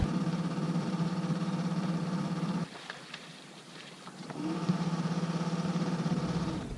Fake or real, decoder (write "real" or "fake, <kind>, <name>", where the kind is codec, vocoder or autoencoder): fake, vocoder, BigVGAN v2